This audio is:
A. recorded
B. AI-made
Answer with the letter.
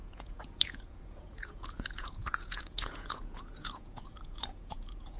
B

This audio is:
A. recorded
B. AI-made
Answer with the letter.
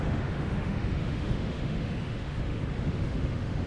B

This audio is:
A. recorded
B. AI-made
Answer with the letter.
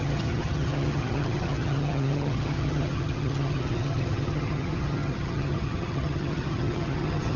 B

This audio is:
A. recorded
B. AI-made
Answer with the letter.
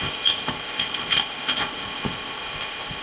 B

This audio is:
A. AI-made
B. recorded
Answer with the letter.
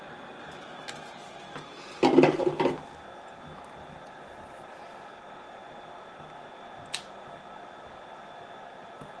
B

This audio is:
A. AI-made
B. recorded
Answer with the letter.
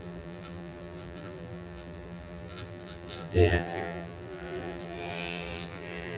A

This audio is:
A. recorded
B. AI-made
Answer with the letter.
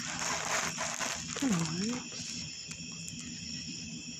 A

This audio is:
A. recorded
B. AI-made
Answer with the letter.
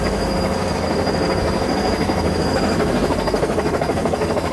B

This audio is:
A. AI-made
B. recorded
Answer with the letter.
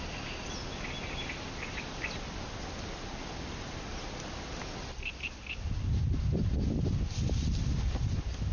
B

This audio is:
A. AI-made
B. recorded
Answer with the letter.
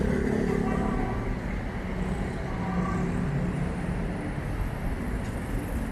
B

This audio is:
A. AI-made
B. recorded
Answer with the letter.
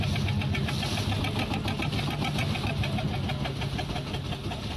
B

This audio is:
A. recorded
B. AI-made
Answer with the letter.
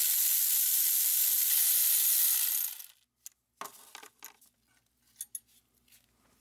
A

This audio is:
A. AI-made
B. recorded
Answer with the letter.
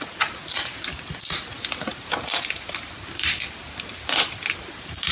B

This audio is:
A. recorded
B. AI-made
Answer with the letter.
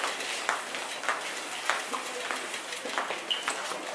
A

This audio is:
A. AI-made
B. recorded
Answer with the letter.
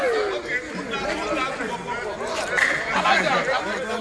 B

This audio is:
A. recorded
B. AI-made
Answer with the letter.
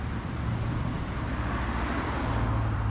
B